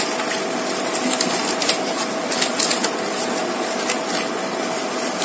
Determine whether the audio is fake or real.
real